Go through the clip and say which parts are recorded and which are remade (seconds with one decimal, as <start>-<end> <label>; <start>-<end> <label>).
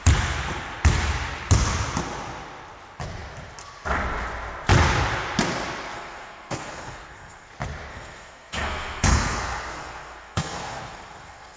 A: 0.0-5.9 recorded; 5.9-7.5 remade; 7.5-7.9 recorded; 7.9-11.6 remade